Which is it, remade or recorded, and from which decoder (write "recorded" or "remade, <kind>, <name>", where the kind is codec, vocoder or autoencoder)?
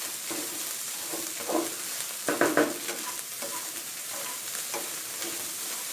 recorded